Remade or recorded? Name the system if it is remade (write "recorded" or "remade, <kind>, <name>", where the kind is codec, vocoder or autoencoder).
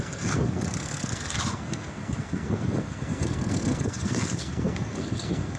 remade, codec, SNAC